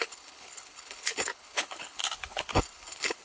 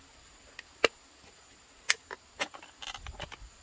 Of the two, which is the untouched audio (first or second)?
second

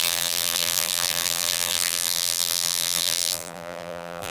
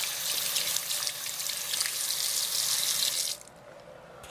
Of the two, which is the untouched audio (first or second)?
second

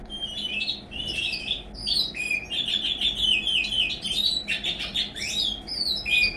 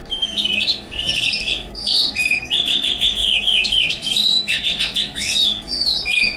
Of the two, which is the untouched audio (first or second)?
first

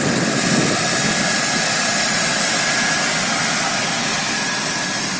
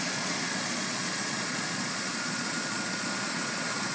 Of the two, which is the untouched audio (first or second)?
first